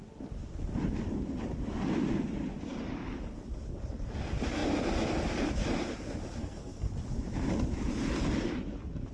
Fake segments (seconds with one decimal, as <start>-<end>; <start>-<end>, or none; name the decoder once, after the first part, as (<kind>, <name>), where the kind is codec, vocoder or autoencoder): 6.4-6.9 (codec, SNAC)